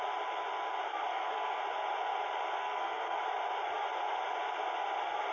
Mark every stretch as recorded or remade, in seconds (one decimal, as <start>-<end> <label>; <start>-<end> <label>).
0.0-1.1 recorded; 1.1-1.6 remade; 1.6-2.6 recorded; 2.6-3.2 remade; 3.2-5.3 recorded